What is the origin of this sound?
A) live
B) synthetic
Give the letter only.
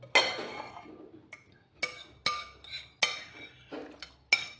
A